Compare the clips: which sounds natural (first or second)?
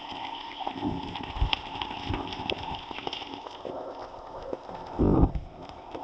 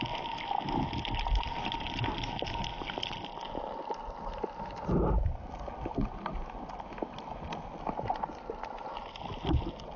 second